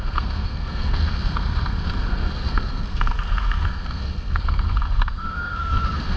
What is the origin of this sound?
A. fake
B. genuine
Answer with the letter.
A